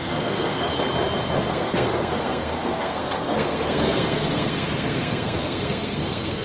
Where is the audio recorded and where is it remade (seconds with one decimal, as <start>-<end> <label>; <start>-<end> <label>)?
0.0-0.7 remade; 0.7-1.5 recorded; 1.5-6.4 remade